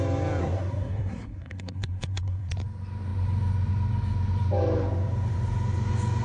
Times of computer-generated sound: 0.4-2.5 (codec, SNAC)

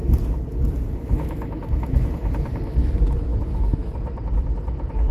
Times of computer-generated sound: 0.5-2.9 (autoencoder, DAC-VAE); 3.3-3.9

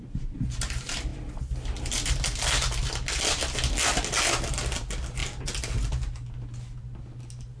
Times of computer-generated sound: none

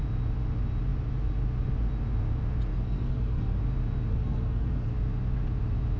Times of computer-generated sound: 2.7-3.6 (codec, SNAC); 4.1-4.9